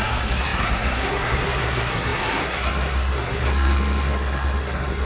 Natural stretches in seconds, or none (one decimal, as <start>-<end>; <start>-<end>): none